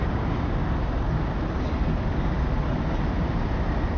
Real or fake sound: real